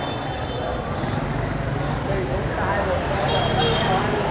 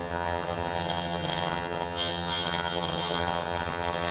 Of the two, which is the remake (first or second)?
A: second